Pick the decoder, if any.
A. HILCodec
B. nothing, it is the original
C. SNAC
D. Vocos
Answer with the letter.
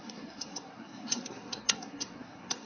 C